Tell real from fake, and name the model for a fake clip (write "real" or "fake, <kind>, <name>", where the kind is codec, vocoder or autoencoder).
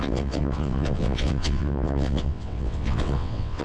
fake, vocoder, WaveNeXt